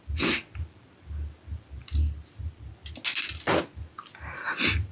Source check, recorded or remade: recorded